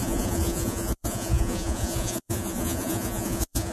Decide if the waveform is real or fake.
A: fake